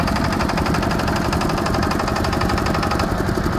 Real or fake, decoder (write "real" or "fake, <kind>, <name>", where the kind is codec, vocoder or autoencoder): fake, vocoder, BigVGAN v2